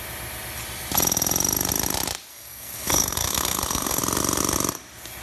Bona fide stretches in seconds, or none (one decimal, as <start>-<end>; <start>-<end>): 0.0-2.3; 4.0-5.2